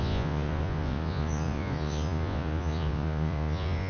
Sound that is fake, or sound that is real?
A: fake